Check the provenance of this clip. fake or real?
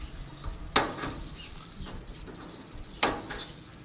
real